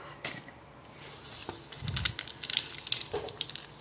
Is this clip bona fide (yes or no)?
yes